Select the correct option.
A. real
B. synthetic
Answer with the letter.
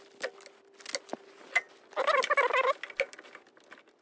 A